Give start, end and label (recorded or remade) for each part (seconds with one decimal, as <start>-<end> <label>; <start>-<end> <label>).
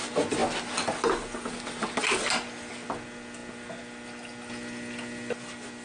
0.0-5.8 recorded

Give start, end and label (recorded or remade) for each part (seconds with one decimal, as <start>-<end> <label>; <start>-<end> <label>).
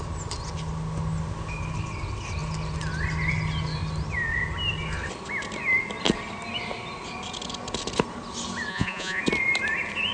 0.0-8.7 recorded; 8.7-9.2 remade; 9.2-10.1 recorded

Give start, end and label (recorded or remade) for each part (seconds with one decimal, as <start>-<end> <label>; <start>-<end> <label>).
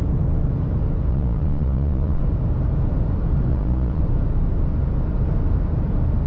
0.0-1.1 recorded; 1.1-2.2 remade; 2.2-3.5 recorded; 3.5-4.0 remade; 4.0-6.3 recorded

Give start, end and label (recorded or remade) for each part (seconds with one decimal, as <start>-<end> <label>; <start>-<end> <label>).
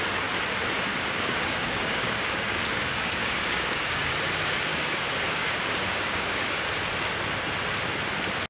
0.0-0.9 recorded; 0.9-4.1 remade; 4.1-4.7 recorded; 4.7-6.7 remade; 6.7-8.5 recorded